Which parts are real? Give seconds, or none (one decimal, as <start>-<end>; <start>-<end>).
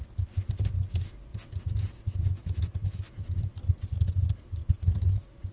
0.0-5.5